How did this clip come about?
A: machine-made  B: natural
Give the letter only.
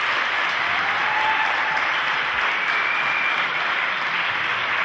B